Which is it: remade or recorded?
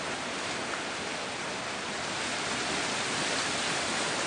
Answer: recorded